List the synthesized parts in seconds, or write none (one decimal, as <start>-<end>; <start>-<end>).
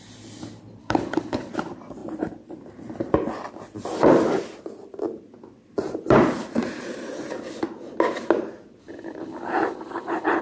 0.8-1.5; 8.8-10.4